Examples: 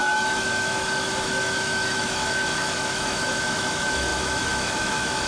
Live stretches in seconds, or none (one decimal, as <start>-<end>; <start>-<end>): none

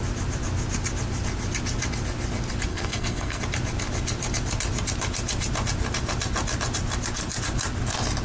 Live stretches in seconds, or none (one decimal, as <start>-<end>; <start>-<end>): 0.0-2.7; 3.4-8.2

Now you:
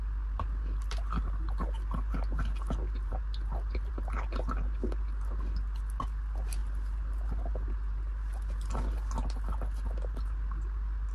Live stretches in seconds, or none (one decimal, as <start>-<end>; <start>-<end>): 0.0-11.1

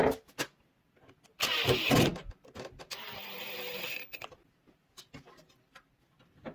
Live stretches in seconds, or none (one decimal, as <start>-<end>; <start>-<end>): 0.0-6.5

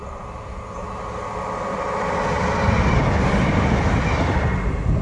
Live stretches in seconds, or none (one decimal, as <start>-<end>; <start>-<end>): 0.0-5.0

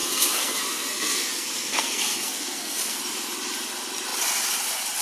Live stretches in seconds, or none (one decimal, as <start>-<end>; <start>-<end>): 3.0-5.0

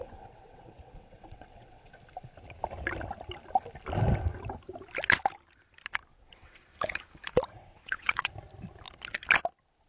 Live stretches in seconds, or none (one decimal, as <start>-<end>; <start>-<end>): 1.9-6.1; 7.0-7.5; 8.3-9.9